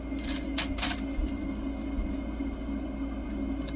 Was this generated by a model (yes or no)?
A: no